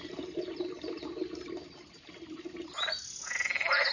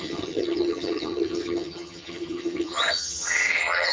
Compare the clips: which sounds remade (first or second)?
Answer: second